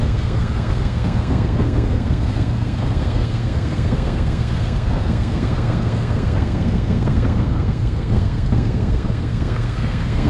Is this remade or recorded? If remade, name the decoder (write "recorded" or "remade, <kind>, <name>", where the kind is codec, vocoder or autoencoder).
remade, codec, SNAC